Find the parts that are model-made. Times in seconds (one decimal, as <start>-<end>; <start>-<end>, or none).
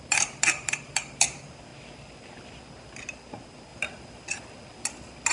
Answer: 0.0-1.7; 3.3-3.7